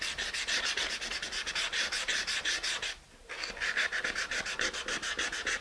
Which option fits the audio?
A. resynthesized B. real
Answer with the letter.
B